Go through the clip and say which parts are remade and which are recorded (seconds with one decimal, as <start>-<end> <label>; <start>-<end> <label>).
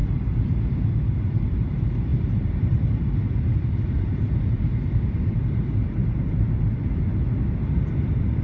0.0-1.7 remade; 1.7-2.1 recorded; 2.1-7.0 remade; 7.0-8.4 recorded